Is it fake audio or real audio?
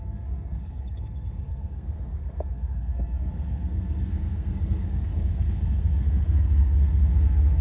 fake